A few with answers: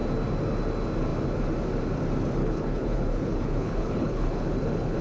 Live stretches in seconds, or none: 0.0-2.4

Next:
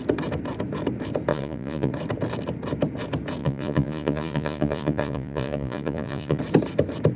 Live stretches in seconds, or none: 0.0-1.3; 1.9-3.4; 6.4-7.2

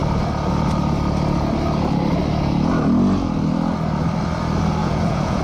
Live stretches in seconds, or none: 0.0-4.8

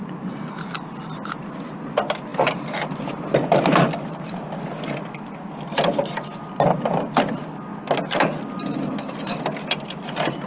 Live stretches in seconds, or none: 0.0-10.5